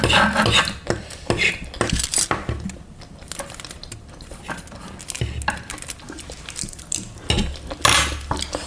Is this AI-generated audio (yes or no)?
no